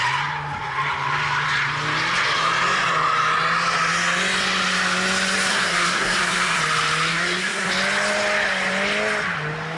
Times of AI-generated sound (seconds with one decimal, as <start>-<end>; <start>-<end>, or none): 5.5-6.6; 7.1-7.7